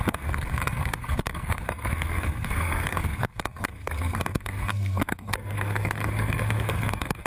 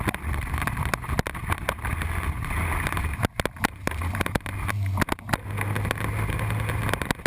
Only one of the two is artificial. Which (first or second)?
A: first